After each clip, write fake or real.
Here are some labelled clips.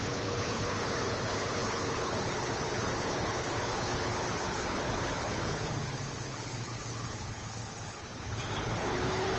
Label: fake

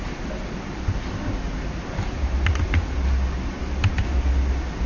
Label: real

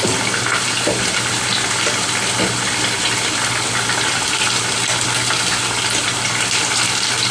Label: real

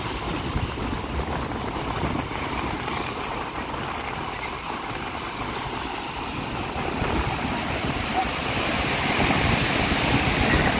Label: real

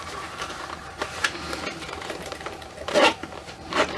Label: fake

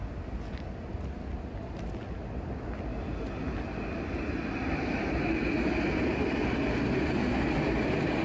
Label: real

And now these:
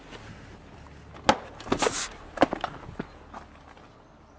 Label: real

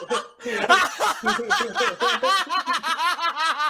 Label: real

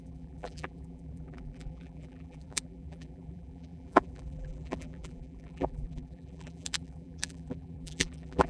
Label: fake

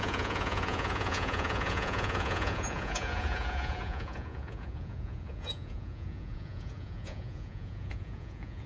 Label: fake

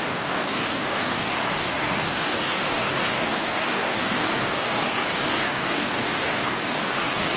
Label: fake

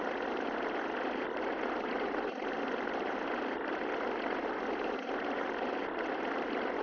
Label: real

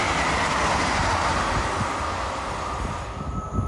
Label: real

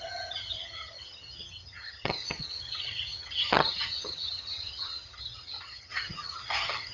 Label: fake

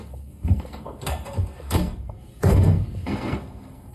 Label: fake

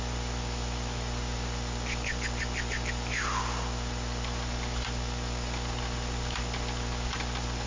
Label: real